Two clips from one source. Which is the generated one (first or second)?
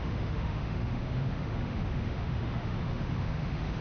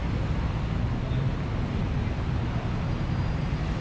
first